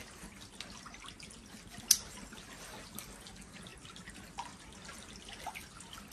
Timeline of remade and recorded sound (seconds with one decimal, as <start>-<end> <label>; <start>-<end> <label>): 0.0-6.1 recorded